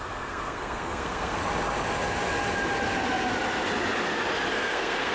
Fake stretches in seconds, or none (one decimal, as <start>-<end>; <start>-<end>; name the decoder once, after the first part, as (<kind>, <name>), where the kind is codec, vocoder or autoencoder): 0.0-1.4 (codec, SNAC); 4.5-5.1